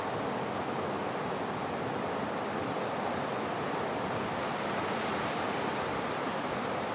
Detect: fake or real real